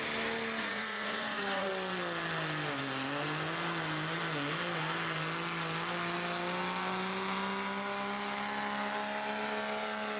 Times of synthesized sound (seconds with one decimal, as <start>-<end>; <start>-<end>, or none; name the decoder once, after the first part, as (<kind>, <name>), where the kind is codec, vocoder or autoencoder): 0.6-1.7 (vocoder, Vocos)